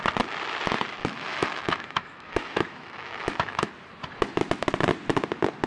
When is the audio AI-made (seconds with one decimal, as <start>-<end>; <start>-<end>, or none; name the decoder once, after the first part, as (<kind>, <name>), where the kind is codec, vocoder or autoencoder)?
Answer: 1.0-3.7 (autoencoder, DAC-VAE)

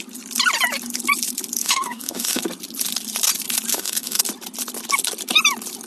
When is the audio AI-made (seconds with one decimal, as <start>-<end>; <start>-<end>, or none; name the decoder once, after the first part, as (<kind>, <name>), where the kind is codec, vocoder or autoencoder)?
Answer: 1.6-2.4 (autoencoder, DAC-VAE); 3.7-4.2